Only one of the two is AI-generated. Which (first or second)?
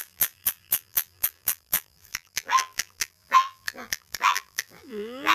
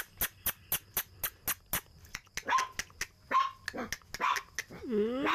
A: first